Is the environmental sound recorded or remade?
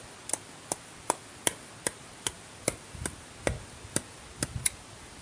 recorded